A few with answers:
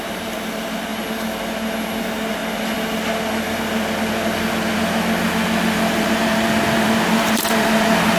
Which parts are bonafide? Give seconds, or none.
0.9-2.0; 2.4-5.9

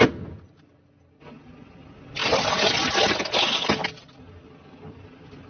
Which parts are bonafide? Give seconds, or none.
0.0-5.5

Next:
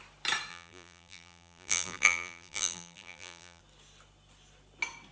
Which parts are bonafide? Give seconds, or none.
0.0-0.5; 3.6-5.1

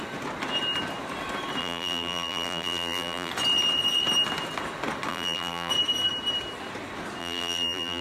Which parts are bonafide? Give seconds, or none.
0.0-1.6; 3.3-5.1; 5.7-7.2

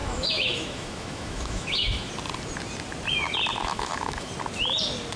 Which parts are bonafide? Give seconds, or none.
2.1-3.6; 4.3-5.2